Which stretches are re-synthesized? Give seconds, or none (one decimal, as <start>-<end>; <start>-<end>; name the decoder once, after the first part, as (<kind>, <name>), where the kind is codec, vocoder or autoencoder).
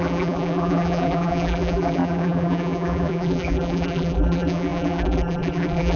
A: 0.0-6.0 (vocoder, BigVGAN v2)